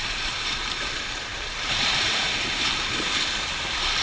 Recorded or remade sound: remade